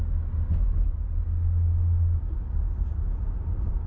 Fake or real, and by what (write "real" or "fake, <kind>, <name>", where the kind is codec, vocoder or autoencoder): real